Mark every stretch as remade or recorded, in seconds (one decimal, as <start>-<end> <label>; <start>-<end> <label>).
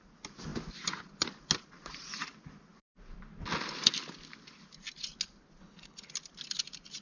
0.0-5.6 recorded; 5.6-6.1 remade; 6.1-7.0 recorded